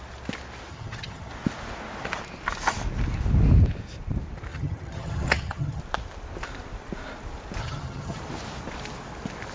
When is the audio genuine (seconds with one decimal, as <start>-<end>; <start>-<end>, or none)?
0.0-0.7; 1.3-4.5; 5.8-7.6; 8.2-9.5